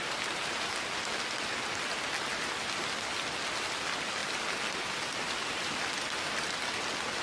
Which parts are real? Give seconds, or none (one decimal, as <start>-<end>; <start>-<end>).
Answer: 0.0-7.2